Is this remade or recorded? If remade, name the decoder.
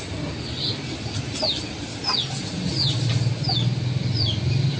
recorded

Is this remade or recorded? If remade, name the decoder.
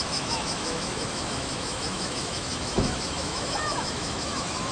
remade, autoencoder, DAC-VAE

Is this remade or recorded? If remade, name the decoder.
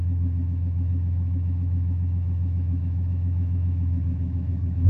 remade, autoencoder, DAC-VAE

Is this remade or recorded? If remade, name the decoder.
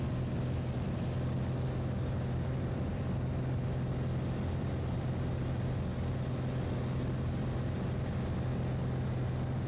recorded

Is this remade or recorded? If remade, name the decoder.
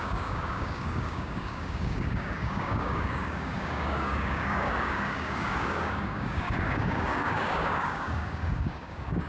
remade, codec, DAC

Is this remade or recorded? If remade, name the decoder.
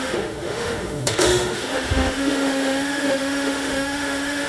remade, autoencoder, DAC-VAE